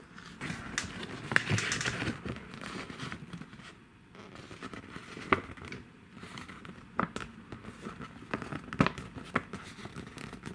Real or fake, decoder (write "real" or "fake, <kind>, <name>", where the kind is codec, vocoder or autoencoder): real